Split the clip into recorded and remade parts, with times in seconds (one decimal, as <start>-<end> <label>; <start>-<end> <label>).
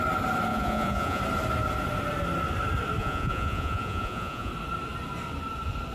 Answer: 0.0-0.5 recorded; 0.5-1.2 remade; 1.2-3.0 recorded; 3.0-4.5 remade; 4.5-5.9 recorded